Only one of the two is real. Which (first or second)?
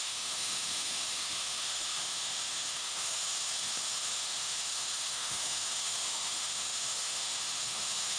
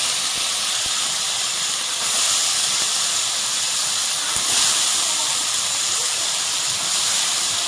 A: second